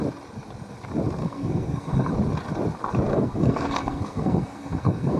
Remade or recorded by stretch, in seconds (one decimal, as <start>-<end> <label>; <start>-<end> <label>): 0.0-1.2 recorded; 1.2-2.1 remade; 2.1-3.1 recorded; 3.1-5.2 remade